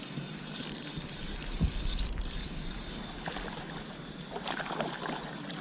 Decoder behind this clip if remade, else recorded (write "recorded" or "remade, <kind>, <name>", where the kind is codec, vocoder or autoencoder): recorded